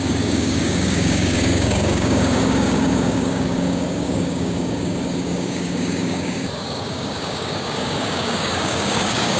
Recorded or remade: remade